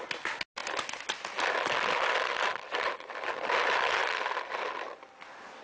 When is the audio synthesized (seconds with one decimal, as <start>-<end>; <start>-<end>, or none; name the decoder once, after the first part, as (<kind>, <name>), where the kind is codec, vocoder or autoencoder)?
none